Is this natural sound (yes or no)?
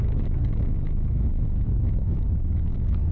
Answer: no